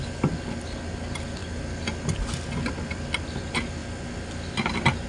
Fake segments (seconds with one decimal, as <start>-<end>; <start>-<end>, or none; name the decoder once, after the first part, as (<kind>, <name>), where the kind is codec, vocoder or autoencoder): none